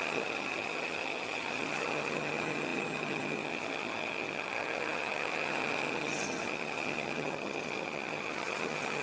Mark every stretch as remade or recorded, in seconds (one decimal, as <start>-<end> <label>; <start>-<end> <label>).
0.0-9.0 remade